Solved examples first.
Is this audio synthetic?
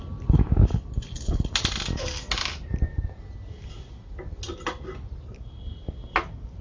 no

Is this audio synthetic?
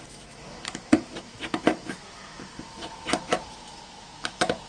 yes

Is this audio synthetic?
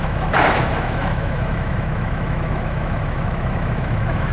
yes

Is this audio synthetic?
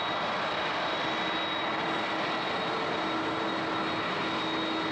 no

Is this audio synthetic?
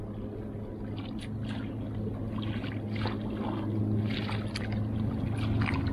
no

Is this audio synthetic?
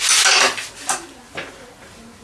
no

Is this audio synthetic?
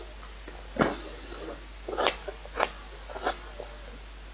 no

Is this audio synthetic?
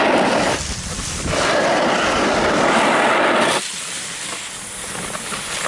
no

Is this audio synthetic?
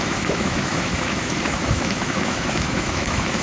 yes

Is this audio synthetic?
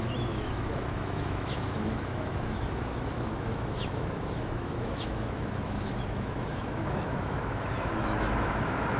yes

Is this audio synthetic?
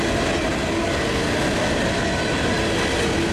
no